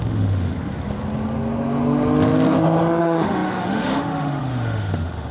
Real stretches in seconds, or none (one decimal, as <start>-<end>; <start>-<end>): 0.5-3.0